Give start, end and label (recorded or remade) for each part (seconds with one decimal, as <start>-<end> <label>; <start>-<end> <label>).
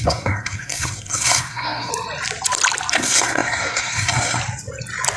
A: 0.0-1.9 remade; 1.9-2.9 recorded; 2.9-4.4 remade; 4.4-5.2 recorded